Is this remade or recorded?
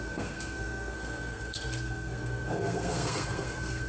remade